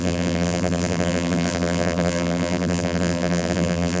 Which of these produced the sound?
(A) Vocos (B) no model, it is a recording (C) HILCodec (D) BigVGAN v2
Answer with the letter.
D